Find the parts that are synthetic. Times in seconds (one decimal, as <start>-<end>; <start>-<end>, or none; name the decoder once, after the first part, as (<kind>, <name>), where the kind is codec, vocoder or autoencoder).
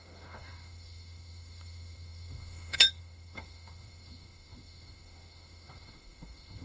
0.0-6.6 (autoencoder, DAC-VAE)